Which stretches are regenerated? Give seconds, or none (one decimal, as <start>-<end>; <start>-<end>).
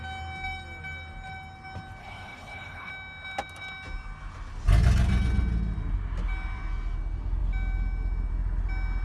2.0-2.9